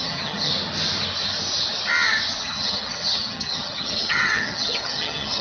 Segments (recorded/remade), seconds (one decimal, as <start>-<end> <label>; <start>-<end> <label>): 0.0-0.5 remade; 0.5-2.4 recorded; 2.4-5.4 remade